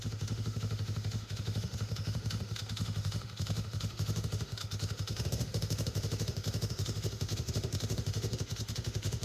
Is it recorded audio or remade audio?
remade